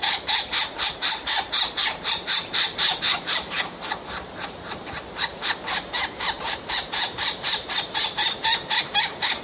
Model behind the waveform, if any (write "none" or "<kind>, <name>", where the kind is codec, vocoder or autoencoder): vocoder, BigVGAN v2